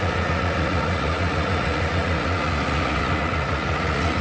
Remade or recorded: remade